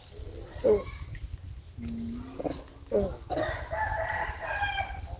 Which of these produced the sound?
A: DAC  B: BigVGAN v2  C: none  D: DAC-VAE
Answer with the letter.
C